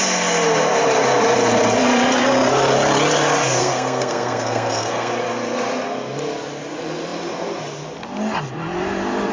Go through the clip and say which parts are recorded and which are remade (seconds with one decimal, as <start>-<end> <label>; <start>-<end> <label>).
0.0-3.6 recorded; 3.6-5.1 remade; 5.1-9.3 recorded